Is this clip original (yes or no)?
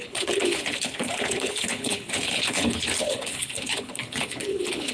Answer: no